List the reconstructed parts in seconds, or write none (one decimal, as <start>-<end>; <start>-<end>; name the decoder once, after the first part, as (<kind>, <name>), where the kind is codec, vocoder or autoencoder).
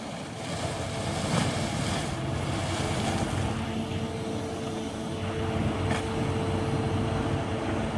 none